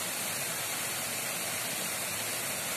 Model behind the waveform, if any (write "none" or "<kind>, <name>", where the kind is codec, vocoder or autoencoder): none